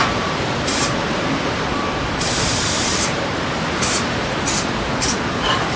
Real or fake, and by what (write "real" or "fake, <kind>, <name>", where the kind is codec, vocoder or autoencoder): fake, vocoder, BigVGAN v2